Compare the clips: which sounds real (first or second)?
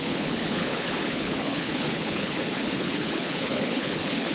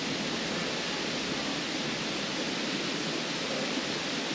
second